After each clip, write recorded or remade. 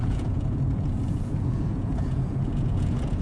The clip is remade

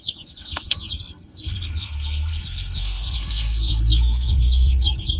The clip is remade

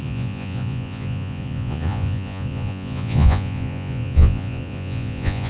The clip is remade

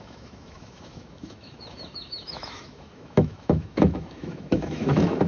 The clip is remade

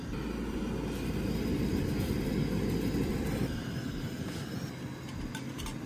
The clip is recorded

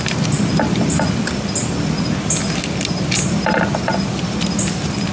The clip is recorded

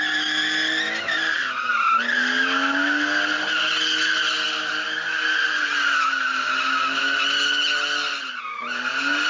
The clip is recorded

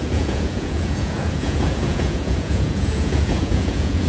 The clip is remade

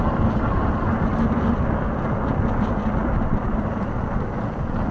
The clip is recorded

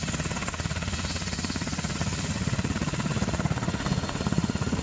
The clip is remade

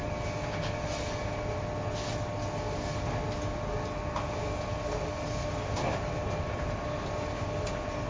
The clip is recorded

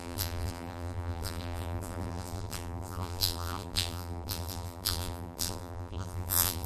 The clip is remade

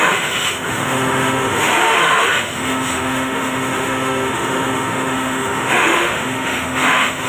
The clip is remade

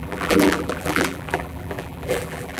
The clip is remade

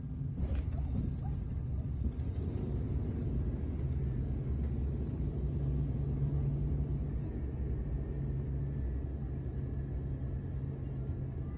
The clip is recorded